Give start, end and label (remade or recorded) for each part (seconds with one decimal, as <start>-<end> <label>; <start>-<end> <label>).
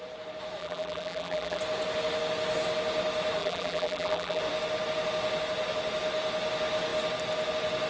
0.0-0.6 recorded; 0.6-1.6 remade; 1.6-3.4 recorded; 3.4-4.4 remade; 4.4-7.9 recorded